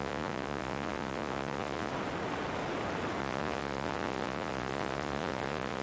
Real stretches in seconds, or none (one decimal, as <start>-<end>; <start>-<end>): 1.9-3.2